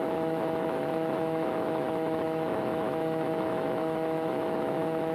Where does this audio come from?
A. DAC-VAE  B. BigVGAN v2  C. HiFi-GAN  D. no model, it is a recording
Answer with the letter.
A